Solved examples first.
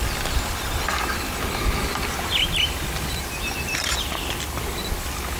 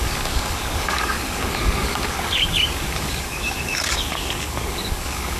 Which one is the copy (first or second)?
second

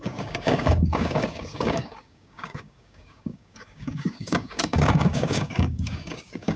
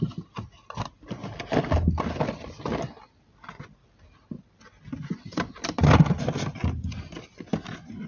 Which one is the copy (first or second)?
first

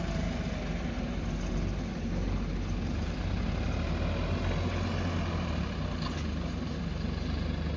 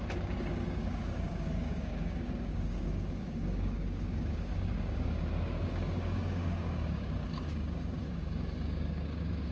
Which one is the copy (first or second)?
second